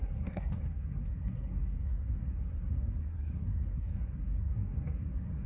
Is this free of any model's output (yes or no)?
no